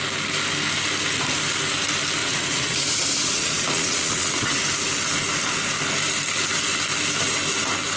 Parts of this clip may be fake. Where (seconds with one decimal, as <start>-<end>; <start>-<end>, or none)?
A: 2.2-4.6